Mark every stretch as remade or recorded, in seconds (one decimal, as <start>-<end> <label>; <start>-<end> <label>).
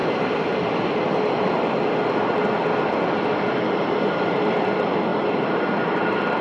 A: 0.0-6.4 recorded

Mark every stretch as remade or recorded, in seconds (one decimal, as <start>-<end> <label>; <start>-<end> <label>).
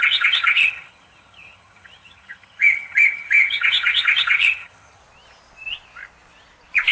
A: 0.0-5.0 remade; 5.0-6.9 recorded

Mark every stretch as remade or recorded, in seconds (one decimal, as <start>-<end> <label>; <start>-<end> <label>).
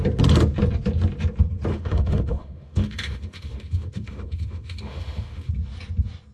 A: 0.0-1.7 recorded; 1.7-5.5 remade; 5.5-6.3 recorded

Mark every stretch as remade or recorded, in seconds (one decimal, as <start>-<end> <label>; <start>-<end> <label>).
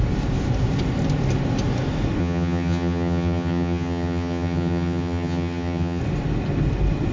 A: 0.0-2.2 recorded; 2.2-6.0 remade; 6.0-7.1 recorded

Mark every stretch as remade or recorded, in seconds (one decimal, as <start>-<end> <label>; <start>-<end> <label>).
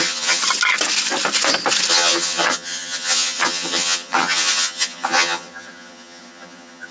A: 0.0-0.4 remade; 0.4-1.9 recorded; 1.9-6.9 remade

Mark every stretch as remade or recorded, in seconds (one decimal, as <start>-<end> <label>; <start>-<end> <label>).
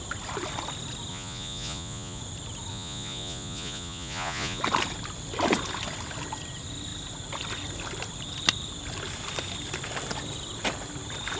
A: 0.0-1.1 recorded; 1.1-2.2 remade; 2.2-2.7 recorded; 2.7-4.6 remade; 4.6-11.4 recorded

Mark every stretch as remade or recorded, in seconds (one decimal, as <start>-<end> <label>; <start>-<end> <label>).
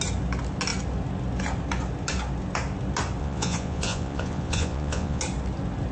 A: 0.0-3.2 recorded; 3.2-5.2 remade; 5.2-5.9 recorded